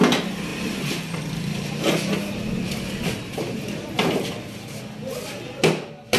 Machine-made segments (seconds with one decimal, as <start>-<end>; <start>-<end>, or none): 0.5-3.9